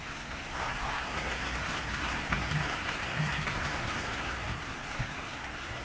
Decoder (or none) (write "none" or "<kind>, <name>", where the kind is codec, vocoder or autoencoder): codec, SNAC